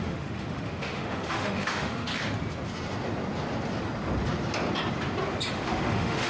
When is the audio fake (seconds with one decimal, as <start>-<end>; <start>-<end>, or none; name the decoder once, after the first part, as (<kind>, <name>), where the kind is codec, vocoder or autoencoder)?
0.0-2.1 (autoencoder, DAC-VAE); 5.5-6.3